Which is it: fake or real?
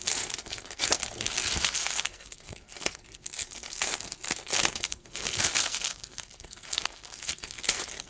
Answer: fake